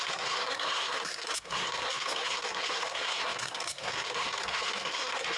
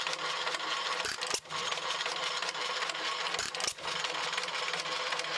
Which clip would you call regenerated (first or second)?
first